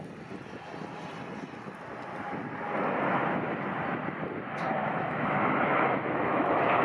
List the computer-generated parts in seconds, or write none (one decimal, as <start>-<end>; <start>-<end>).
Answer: 4.8-6.8